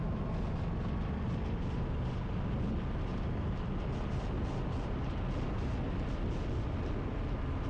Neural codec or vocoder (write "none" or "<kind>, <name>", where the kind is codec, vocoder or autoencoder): none